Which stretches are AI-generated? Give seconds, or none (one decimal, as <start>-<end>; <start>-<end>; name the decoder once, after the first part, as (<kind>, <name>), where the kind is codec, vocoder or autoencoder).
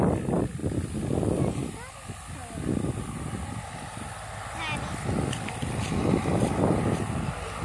none